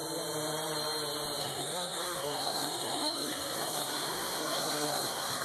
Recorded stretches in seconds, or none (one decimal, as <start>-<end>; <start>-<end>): 0.0-1.4